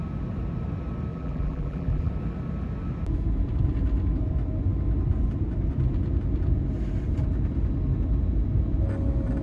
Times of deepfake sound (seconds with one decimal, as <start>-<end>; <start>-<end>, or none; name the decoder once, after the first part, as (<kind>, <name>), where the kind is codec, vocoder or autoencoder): 1.1-2.1 (vocoder, BigVGAN v2)